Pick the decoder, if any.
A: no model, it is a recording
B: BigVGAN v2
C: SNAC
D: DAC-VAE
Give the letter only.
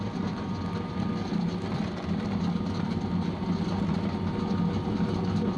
A